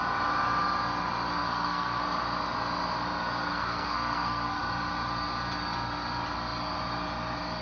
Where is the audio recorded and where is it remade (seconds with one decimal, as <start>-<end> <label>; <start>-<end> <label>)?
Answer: 0.0-1.4 recorded; 1.4-2.0 remade; 2.0-3.5 recorded; 3.5-4.6 remade; 4.6-7.6 recorded